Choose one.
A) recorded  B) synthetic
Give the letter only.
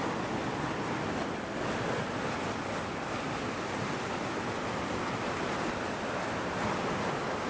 A